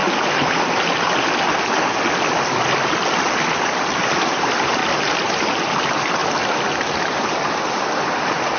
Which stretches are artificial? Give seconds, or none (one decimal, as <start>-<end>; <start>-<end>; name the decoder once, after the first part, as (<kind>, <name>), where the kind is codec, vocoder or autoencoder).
4.0-4.8 (vocoder, BigVGAN v2); 5.4-6.2; 7.0-8.6